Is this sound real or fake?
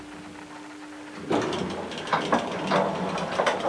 real